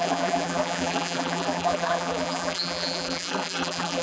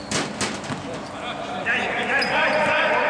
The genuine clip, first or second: second